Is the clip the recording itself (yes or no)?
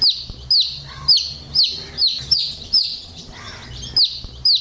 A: yes